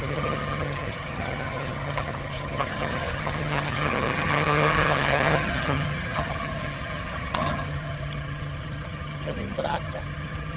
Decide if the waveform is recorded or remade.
remade